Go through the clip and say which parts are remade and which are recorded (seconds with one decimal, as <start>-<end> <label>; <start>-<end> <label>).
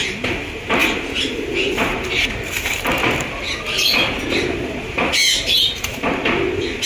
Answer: 0.0-6.9 recorded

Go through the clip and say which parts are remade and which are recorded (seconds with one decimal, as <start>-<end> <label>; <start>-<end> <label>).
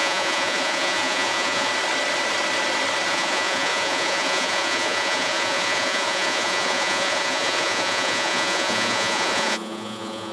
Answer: 0.0-1.7 remade; 1.7-3.1 recorded; 3.1-10.3 remade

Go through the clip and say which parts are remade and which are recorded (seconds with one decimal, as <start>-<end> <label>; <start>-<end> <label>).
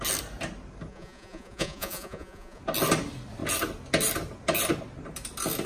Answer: 0.0-0.9 recorded; 0.9-2.6 remade; 2.6-5.7 recorded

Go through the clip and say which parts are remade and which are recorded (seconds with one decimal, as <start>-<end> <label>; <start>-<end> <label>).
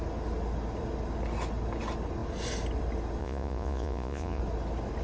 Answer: 0.0-3.2 recorded; 3.2-4.4 remade; 4.4-5.0 recorded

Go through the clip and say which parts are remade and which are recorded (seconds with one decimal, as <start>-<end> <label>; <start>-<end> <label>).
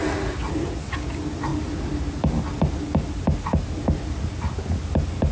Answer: 0.0-5.3 recorded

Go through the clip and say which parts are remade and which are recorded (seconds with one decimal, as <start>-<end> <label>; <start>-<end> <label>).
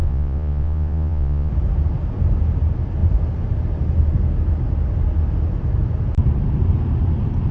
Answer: 0.0-1.5 remade; 1.5-7.5 recorded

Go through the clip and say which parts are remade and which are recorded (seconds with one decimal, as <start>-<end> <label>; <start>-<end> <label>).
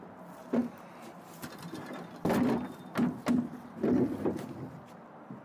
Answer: 0.0-5.4 recorded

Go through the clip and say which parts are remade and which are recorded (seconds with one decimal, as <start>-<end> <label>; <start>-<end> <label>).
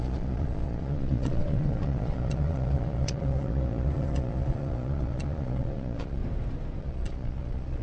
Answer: 0.0-6.2 remade; 6.2-6.8 recorded; 6.8-7.8 remade